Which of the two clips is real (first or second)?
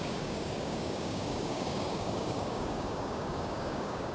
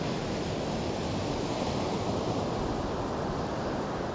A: second